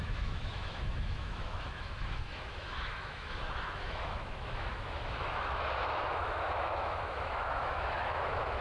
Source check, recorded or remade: remade